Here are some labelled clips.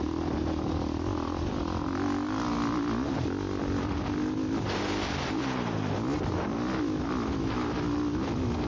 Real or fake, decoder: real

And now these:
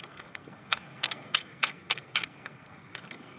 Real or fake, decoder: fake, codec, SNAC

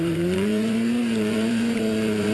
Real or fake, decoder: fake, vocoder, Vocos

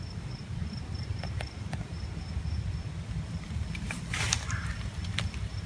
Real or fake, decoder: real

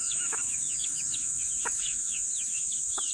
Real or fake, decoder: fake, autoencoder, DAC-VAE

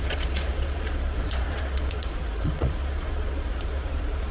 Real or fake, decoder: fake, vocoder, Vocos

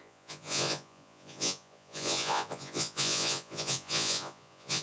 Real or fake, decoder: fake, vocoder, Vocos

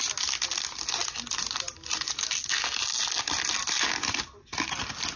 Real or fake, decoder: real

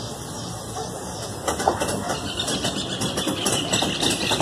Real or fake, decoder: fake, vocoder, BigVGAN v2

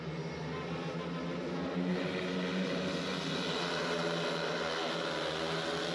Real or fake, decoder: real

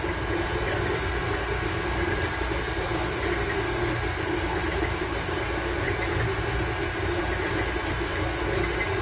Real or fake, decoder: real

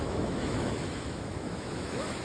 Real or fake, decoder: fake, autoencoder, DAC-VAE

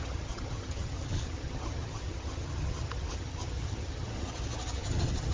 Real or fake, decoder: fake, vocoder, HiFi-GAN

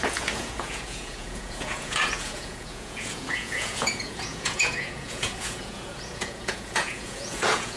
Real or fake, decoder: fake, vocoder, Vocos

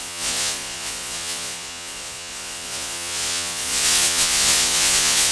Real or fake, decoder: fake, vocoder, Vocos